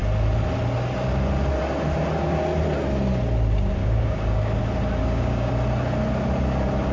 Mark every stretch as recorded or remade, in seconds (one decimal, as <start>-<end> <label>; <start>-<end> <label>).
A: 0.0-3.8 recorded; 3.8-4.6 remade; 4.6-5.0 recorded; 5.0-5.5 remade; 5.5-6.9 recorded